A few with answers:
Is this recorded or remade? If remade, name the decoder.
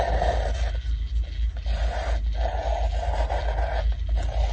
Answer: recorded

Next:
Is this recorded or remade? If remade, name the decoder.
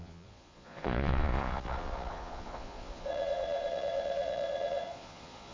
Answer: remade, vocoder, Vocos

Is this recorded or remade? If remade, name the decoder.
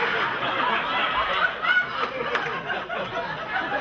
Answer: recorded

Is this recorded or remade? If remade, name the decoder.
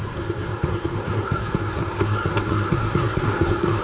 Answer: remade, codec, SNAC